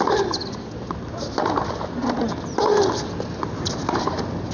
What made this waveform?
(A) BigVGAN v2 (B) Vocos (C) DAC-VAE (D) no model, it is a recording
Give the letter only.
D